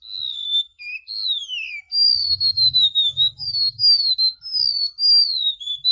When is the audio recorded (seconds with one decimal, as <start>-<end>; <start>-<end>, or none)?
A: 0.0-2.2; 4.1-5.9